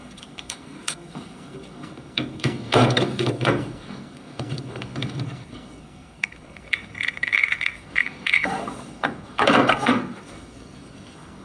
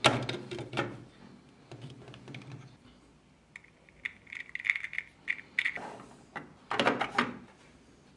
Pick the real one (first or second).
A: second